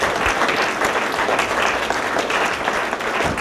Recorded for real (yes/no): yes